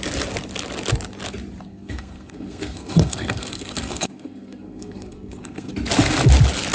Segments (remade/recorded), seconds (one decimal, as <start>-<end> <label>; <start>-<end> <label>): 0.0-1.7 recorded; 1.7-5.7 remade; 5.7-6.7 recorded